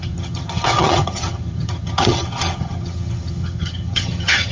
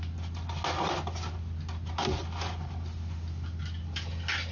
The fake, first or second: first